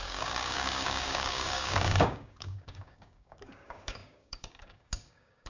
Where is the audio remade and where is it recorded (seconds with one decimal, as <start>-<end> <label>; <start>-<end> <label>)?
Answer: 0.0-5.5 remade